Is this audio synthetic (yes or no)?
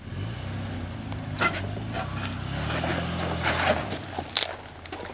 no